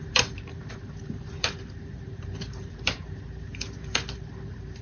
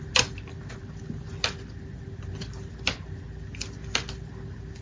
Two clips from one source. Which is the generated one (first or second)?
first